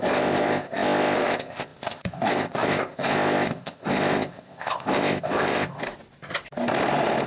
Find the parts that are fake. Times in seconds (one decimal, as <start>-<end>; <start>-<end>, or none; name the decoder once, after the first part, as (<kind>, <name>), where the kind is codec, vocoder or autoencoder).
0.0-5.8 (codec, ZipCodec)